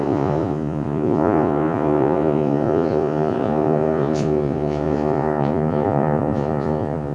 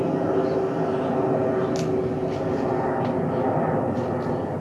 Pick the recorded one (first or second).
second